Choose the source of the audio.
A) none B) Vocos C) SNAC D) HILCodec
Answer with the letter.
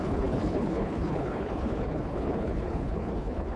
D